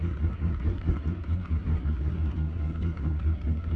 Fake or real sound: fake